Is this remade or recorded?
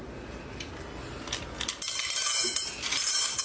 recorded